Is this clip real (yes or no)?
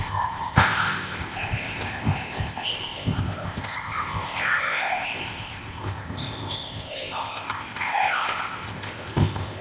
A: no